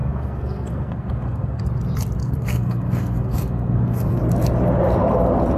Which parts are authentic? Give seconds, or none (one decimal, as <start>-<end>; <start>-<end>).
1.6-2.2; 4.2-5.6